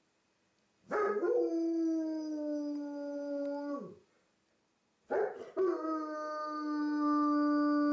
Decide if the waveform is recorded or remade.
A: recorded